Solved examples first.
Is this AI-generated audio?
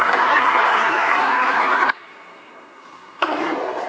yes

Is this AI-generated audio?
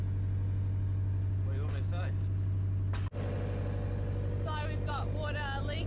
no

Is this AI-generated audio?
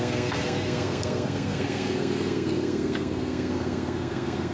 yes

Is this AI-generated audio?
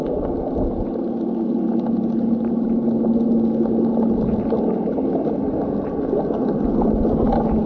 no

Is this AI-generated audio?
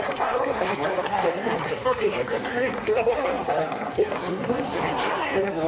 yes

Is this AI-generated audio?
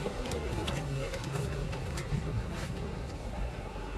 yes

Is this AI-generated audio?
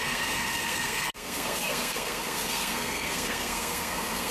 yes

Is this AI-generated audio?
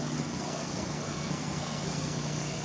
yes